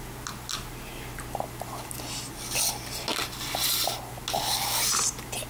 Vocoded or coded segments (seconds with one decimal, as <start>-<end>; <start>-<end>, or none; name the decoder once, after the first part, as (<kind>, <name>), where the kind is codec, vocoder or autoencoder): none